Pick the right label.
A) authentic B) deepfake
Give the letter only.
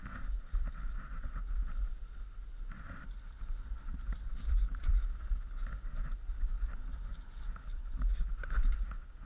A